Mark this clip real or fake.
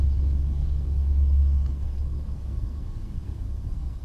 fake